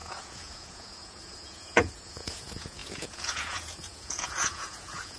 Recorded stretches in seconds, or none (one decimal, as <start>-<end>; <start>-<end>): none